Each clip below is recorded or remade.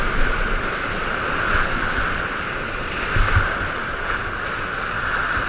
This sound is recorded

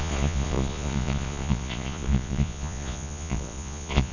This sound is remade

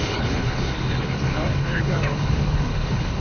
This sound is remade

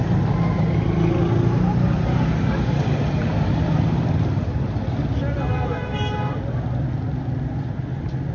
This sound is recorded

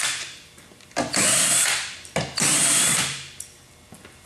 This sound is remade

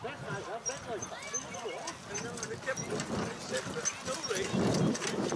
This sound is recorded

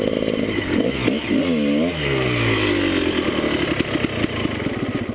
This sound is recorded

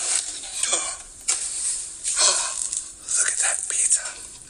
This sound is recorded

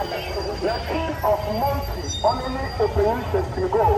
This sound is recorded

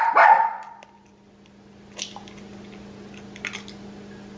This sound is recorded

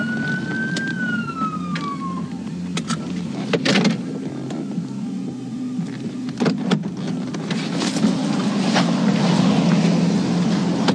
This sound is recorded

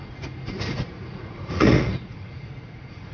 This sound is remade